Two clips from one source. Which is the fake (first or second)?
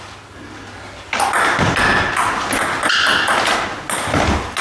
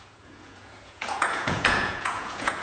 second